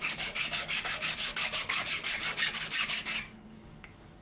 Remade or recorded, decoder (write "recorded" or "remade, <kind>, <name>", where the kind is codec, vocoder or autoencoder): remade, codec, DAC